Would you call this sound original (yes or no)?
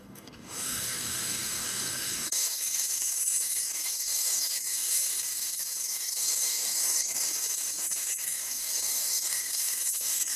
no